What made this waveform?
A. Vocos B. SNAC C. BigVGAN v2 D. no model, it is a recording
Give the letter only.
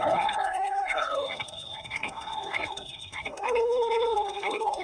B